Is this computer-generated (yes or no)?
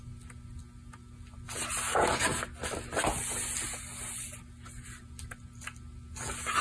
no